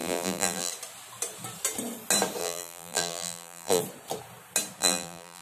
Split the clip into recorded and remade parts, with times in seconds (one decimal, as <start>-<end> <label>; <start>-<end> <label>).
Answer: 0.0-0.7 remade; 0.7-2.4 recorded; 2.4-3.8 remade; 3.8-4.8 recorded; 4.8-5.4 remade